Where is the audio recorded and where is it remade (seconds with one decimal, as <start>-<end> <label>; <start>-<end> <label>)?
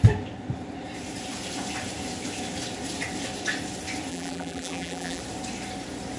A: 0.0-4.1 recorded; 4.1-5.2 remade; 5.2-6.2 recorded